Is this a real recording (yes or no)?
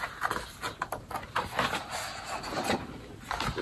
yes